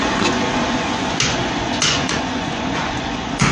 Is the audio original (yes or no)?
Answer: no